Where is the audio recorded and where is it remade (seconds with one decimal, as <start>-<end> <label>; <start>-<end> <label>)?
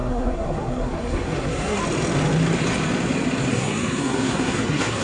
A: 0.0-1.8 remade; 1.8-3.5 recorded; 3.5-5.0 remade